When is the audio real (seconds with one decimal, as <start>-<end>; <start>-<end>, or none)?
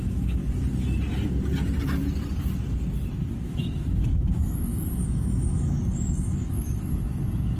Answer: 0.4-3.3